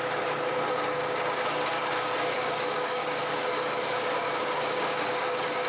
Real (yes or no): no